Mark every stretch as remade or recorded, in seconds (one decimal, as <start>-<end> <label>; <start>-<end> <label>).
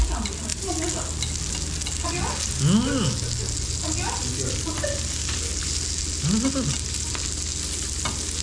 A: 0.0-8.4 recorded